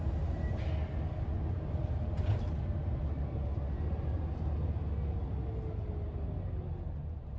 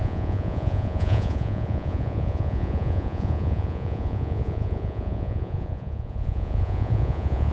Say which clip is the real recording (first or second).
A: first